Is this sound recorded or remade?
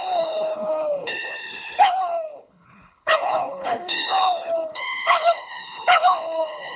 remade